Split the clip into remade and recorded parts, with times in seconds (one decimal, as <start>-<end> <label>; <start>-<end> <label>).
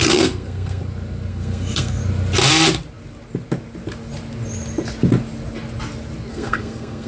0.0-0.8 remade; 0.8-1.3 recorded; 1.3-2.0 remade; 2.0-6.3 recorded; 6.3-7.1 remade